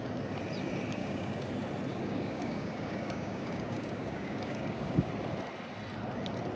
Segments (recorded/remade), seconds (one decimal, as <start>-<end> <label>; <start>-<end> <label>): 0.0-1.0 recorded; 1.0-1.5 remade; 1.5-1.9 recorded; 1.9-5.1 remade; 5.1-6.6 recorded